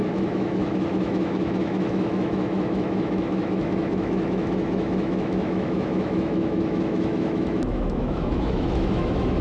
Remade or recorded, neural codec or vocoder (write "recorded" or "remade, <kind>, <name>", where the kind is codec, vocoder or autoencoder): remade, autoencoder, DAC-VAE